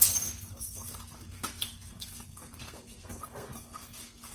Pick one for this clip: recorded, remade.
remade